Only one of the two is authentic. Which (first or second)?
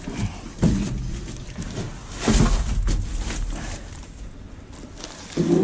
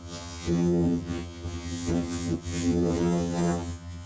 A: first